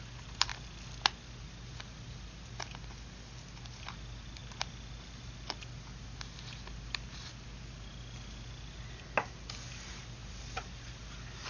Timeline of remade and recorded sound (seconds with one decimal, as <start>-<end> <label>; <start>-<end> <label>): 0.0-11.5 recorded